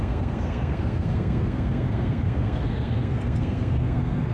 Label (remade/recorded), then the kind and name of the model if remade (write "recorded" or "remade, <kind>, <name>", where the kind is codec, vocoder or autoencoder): remade, codec, SNAC